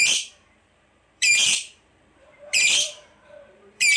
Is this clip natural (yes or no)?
no